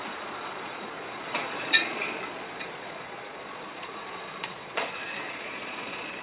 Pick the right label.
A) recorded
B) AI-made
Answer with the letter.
B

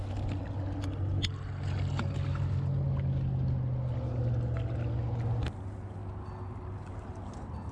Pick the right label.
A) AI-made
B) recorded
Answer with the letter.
B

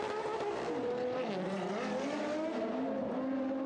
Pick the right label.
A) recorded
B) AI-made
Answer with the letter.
A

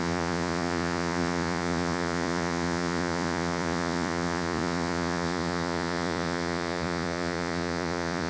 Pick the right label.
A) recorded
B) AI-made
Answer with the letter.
B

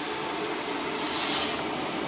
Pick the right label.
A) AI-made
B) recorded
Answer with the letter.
B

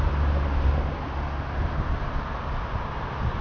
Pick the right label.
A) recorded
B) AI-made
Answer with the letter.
A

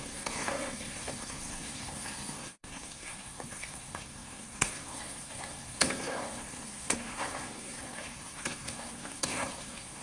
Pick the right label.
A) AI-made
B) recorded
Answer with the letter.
A